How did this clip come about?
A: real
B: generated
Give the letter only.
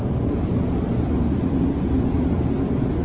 A